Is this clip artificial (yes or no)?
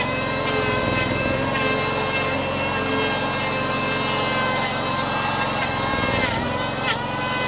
no